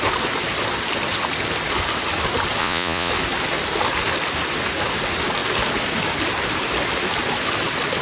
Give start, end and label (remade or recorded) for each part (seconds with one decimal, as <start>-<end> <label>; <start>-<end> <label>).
0.0-2.6 recorded; 2.6-3.1 remade; 3.1-8.0 recorded